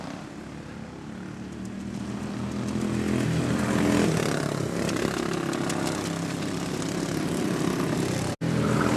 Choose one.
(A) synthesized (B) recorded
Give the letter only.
B